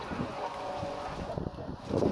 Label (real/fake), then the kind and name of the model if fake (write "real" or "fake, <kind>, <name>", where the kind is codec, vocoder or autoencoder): fake, vocoder, Vocos